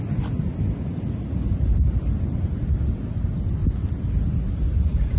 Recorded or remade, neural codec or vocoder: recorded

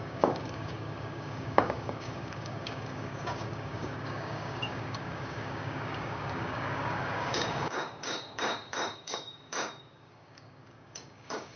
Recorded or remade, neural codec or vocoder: remade, codec, DAC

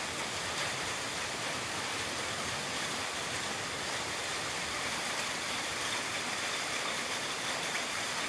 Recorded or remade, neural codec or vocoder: remade, vocoder, BigVGAN v2